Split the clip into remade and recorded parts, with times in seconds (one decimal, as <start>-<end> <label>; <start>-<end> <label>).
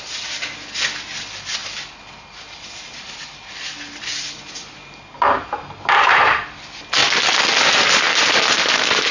0.0-9.1 recorded